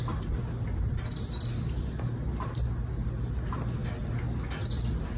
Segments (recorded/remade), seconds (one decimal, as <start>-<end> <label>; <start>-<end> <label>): 0.0-5.2 recorded